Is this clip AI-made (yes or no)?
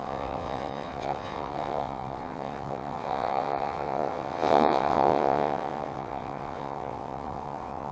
yes